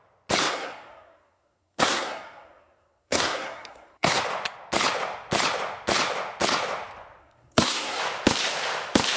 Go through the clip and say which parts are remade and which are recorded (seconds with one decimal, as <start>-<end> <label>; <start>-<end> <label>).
0.0-0.4 recorded; 0.4-4.2 remade; 4.2-7.2 recorded; 7.2-8.0 remade; 8.0-9.2 recorded